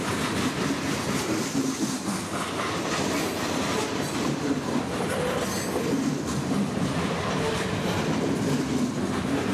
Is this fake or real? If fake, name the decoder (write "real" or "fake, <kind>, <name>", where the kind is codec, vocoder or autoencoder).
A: real